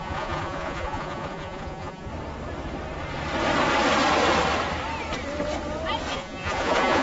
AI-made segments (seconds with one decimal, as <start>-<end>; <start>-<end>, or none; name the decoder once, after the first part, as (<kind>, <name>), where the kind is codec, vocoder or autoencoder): 0.0-2.1 (vocoder, Vocos); 6.1-7.0